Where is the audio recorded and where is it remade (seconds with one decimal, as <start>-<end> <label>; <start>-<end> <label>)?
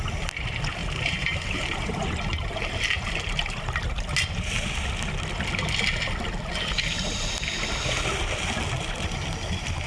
0.0-0.8 recorded; 0.8-2.5 remade; 2.5-9.9 recorded